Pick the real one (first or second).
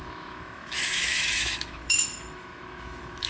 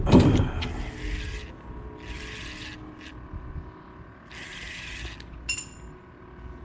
second